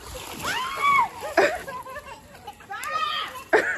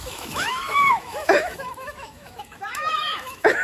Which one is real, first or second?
first